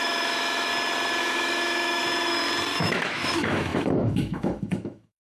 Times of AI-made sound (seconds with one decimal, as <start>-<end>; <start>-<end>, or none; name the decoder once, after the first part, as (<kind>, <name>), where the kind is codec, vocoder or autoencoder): 0.0-0.7 (autoencoder, DAC-VAE); 1.2-2.0; 2.8-5.3

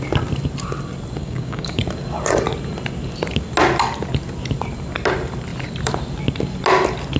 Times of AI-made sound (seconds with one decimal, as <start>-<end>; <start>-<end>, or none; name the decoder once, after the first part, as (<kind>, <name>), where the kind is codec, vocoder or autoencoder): 1.2-1.8 (codec, DAC)